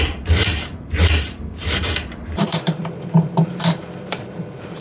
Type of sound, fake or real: fake